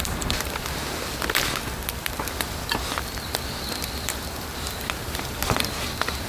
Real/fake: fake